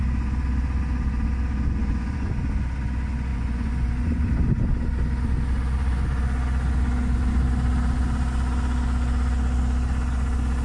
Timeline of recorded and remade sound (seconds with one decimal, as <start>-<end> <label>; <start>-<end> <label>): 0.0-1.8 recorded; 1.8-2.3 remade; 2.3-3.3 recorded; 3.3-4.3 remade; 4.3-10.6 recorded